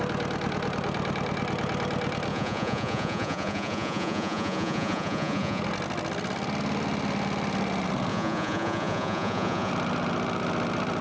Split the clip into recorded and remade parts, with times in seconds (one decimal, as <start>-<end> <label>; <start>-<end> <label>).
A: 0.0-2.3 recorded; 2.3-5.6 remade; 5.6-8.1 recorded; 8.1-9.7 remade; 9.7-11.0 recorded